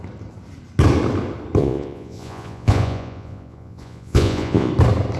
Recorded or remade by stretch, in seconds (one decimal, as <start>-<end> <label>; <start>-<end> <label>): 0.0-1.6 recorded; 1.6-4.7 remade; 4.7-5.2 recorded